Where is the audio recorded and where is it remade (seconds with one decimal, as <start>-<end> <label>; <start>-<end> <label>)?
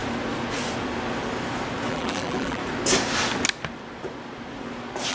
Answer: 0.0-1.9 recorded; 1.9-2.6 remade; 2.6-5.1 recorded